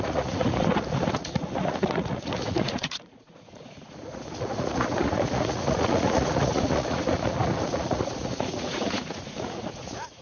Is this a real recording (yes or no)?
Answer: no